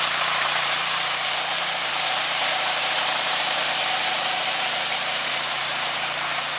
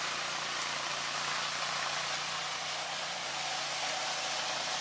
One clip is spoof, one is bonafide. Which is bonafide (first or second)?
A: second